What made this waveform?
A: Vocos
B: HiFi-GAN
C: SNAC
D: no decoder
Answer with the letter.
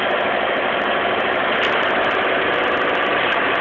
D